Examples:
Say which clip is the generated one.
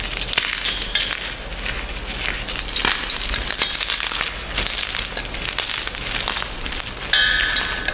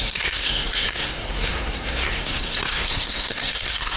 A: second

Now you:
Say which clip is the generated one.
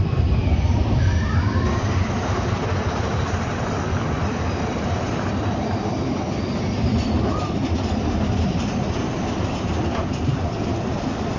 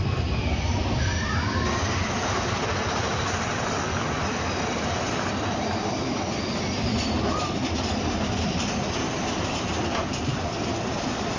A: first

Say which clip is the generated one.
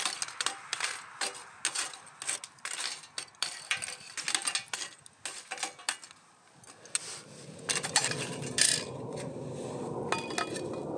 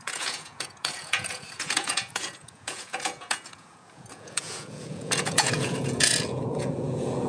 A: second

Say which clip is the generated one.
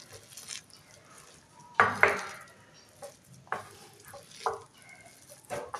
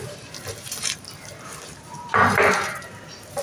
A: second